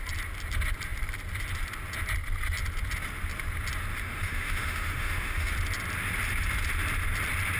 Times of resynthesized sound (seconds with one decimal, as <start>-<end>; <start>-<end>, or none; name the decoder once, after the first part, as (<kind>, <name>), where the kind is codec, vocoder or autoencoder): 3.9-5.5 (autoencoder, DAC-VAE)